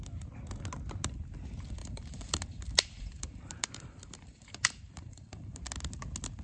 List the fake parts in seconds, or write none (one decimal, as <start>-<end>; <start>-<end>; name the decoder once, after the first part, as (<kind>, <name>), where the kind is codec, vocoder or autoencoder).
1.8-5.6 (vocoder, BigVGAN v2)